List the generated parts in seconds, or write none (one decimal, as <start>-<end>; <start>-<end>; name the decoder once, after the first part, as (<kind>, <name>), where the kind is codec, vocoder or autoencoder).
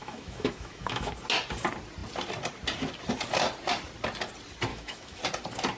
0.0-1.1 (autoencoder, DAC-VAE); 4.7-5.2